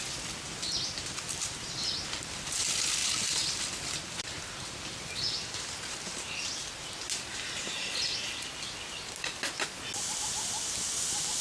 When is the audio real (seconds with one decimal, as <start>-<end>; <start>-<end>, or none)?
0.0-11.4